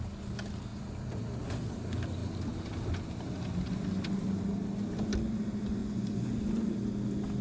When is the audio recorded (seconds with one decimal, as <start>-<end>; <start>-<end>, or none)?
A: 0.0-5.8; 6.4-7.4